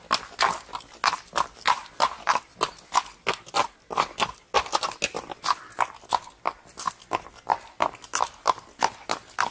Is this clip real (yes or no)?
yes